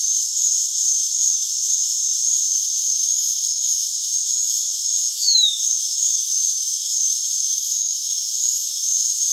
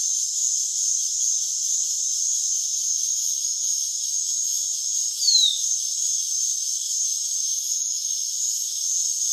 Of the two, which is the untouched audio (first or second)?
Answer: second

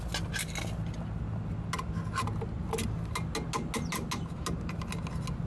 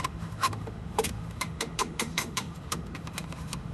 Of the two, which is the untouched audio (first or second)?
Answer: first